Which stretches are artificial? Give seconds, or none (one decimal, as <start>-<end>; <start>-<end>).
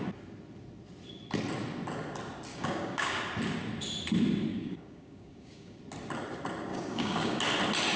2.5-3.2; 4.5-5.8; 6.7-7.4